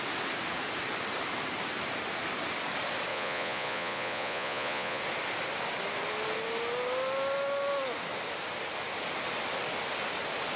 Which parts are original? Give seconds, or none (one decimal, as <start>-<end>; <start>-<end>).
0.0-3.1; 5.0-10.6